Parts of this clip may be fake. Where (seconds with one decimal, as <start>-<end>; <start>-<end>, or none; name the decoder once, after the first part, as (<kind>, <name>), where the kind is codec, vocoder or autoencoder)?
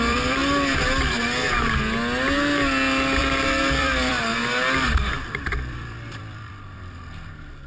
0.0-0.4 (vocoder, BigVGAN v2); 3.2-4.4; 5.4-7.7